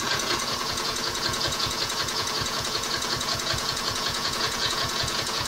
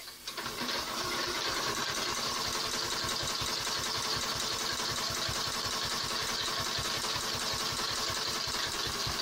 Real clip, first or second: second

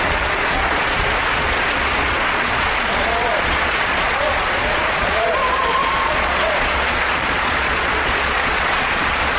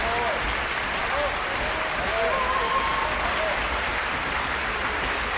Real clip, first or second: second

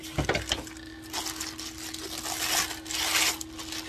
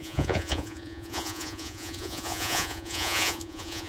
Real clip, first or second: first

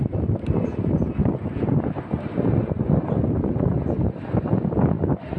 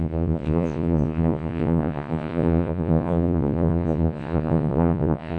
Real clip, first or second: first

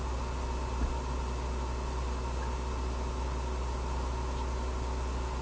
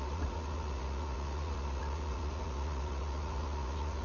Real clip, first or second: first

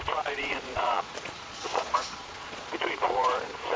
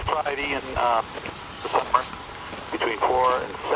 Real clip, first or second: second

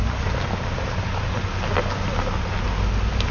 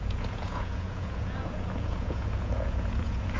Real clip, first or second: first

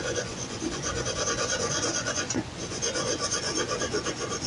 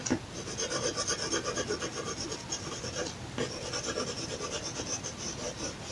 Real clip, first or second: second